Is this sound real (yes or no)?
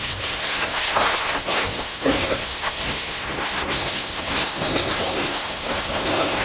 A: no